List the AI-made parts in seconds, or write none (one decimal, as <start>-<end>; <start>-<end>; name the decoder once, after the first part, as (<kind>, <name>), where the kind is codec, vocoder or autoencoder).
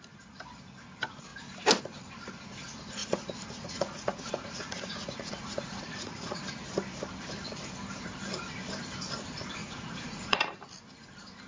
3.0-6.4 (vocoder, Vocos); 9.6-10.6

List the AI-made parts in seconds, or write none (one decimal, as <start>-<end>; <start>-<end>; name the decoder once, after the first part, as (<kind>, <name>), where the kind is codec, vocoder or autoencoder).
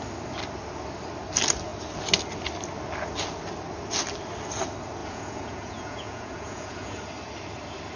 5.0-7.0 (vocoder, Vocos)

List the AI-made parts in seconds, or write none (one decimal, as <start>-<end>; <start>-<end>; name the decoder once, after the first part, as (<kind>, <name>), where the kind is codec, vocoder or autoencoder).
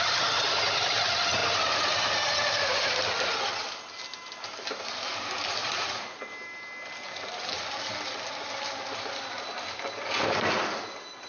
5.6-6.2 (vocoder, Vocos)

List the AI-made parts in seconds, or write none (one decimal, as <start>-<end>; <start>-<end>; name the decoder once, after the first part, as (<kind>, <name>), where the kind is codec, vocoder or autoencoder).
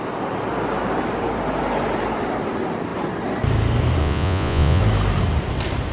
4.0-4.8 (vocoder, Vocos)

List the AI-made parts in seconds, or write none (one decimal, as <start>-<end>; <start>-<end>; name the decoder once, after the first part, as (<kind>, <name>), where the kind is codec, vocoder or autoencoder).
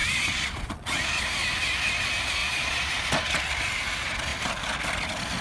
0.0-1.2 (vocoder, Vocos); 2.4-2.9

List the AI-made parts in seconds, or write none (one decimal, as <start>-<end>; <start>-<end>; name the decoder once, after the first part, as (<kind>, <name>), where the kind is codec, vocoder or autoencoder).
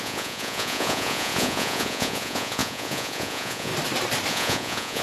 0.0-3.7 (vocoder, Vocos); 4.3-5.0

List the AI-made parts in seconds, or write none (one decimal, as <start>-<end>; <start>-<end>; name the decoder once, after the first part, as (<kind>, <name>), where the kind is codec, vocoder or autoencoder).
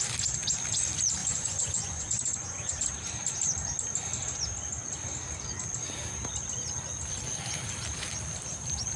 1.2-2.7 (vocoder, Vocos)